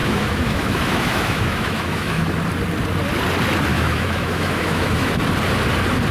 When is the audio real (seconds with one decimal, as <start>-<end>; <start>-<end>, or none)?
2.3-3.7; 5.1-6.1